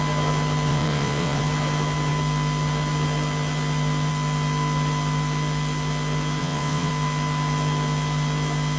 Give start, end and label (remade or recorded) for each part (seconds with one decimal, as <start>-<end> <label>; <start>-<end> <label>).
0.0-0.7 recorded; 0.7-1.4 remade; 1.4-6.4 recorded; 6.4-6.9 remade; 6.9-8.8 recorded